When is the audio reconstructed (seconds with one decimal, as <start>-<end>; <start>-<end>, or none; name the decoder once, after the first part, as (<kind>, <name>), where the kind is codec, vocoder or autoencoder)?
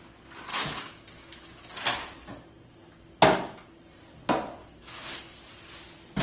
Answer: 0.5-1.7 (autoencoder, DAC-VAE); 4.6-5.2